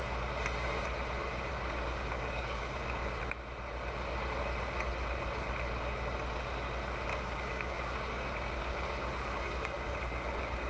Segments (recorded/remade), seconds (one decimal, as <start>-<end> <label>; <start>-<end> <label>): 0.0-1.5 recorded; 1.5-3.2 remade; 3.2-7.1 recorded; 7.1-10.7 remade